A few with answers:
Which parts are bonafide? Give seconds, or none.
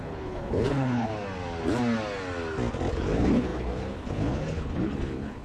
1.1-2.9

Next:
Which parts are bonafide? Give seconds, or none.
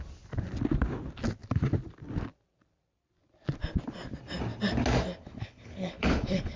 0.0-5.2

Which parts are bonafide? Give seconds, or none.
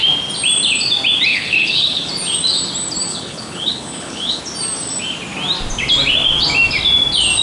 0.0-1.3; 2.1-3.1; 4.4-7.4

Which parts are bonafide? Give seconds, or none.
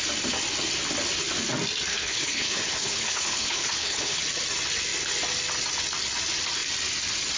0.0-1.9; 4.2-7.4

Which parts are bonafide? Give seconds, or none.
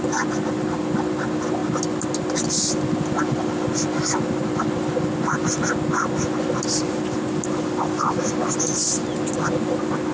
0.0-10.1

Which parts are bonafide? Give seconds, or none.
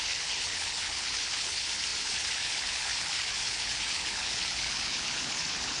none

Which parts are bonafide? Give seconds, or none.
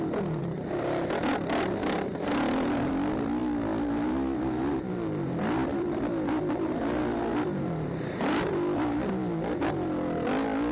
0.0-10.7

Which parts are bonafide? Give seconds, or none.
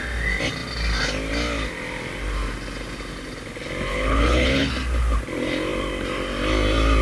0.0-3.9; 4.7-7.0